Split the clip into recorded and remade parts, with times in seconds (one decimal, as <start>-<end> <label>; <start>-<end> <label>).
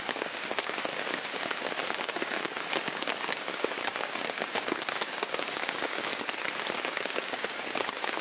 0.0-6.1 remade; 6.1-6.8 recorded; 6.8-8.2 remade